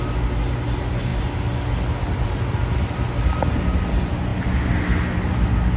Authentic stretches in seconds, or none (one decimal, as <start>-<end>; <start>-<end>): 0.0-5.8